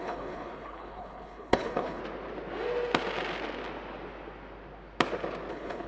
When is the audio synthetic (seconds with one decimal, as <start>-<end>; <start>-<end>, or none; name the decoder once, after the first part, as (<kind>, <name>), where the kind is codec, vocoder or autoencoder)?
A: 0.0-2.0 (codec, HILCodec); 5.5-5.9